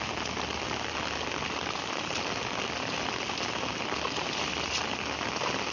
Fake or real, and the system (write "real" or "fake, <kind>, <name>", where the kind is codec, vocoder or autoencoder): real